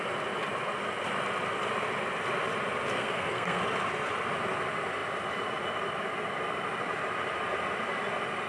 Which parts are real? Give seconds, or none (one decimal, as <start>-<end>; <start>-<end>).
0.0-2.9; 3.6-8.5